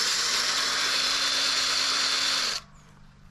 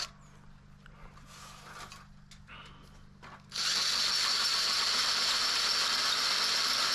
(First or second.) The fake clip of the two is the first